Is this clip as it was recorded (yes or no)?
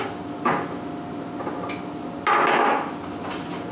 yes